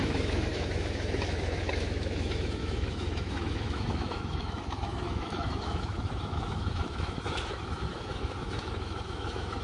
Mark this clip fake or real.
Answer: fake